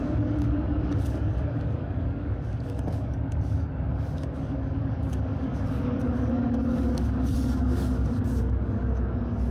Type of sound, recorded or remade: remade